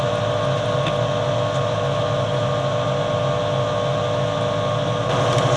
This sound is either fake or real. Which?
real